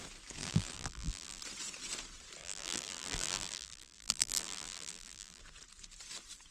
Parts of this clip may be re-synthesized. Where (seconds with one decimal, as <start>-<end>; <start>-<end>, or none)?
0.4-1.4; 2.4-5.4